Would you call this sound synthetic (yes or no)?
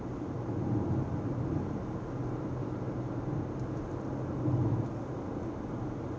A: no